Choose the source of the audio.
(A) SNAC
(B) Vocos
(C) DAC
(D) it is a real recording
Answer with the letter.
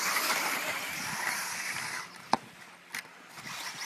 D